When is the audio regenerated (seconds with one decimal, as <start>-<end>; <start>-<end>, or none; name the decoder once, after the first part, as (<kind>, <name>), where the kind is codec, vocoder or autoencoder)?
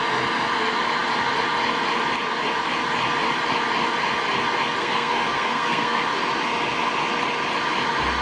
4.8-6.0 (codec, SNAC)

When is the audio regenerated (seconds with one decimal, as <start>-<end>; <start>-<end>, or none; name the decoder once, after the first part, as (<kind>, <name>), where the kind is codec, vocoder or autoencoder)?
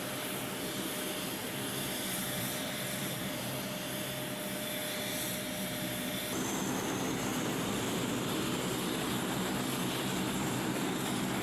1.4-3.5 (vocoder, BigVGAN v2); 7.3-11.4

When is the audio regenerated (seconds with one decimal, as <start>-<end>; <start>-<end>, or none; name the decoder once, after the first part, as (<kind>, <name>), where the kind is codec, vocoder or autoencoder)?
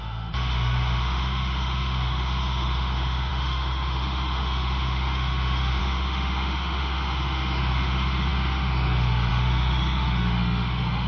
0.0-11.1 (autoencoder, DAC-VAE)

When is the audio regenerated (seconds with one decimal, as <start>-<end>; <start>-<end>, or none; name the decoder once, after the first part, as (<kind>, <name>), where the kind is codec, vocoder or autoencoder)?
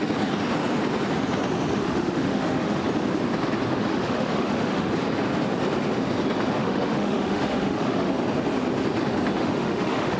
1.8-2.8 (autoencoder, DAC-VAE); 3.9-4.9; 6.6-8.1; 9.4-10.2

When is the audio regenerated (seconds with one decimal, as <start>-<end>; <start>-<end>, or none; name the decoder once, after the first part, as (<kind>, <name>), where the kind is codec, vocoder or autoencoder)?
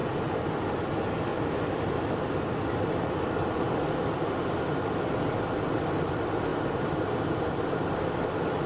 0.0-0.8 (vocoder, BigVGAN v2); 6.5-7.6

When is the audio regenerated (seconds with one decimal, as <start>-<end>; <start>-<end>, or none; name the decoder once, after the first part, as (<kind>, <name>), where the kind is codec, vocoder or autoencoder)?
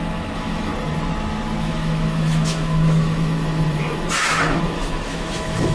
0.0-0.7 (autoencoder, DAC-VAE); 1.6-5.7